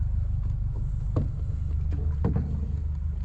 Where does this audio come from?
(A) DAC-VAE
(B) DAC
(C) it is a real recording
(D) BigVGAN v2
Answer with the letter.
C